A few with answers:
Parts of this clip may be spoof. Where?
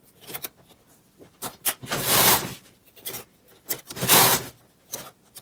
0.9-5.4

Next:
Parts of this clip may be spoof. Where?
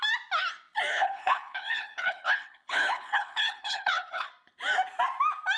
0.9-4.3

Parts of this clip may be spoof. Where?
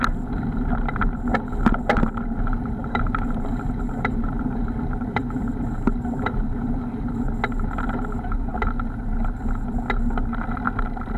2.8-7.3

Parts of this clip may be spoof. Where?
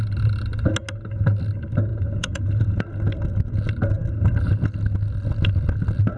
1.9-2.8